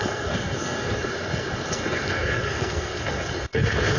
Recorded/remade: remade